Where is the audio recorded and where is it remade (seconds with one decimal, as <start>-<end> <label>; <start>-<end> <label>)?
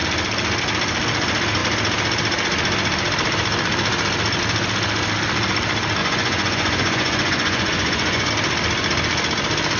0.0-6.0 recorded; 6.0-8.3 remade; 8.3-9.8 recorded